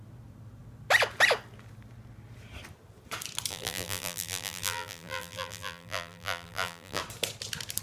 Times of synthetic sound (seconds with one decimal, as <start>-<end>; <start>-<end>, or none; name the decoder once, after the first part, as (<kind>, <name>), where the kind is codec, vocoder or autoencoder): 3.5-7.0 (vocoder, BigVGAN v2)